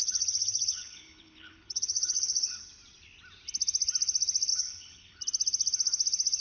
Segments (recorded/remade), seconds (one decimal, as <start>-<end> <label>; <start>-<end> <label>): 0.0-2.6 remade; 2.6-4.5 recorded; 4.5-5.2 remade; 5.2-6.4 recorded